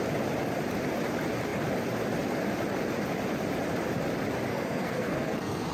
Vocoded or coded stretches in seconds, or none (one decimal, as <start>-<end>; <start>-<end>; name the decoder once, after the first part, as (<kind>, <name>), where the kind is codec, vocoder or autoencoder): 4.5-5.7 (codec, SNAC)